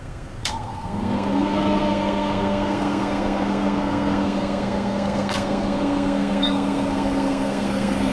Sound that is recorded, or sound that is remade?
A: remade